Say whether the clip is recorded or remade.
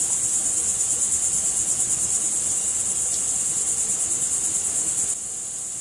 recorded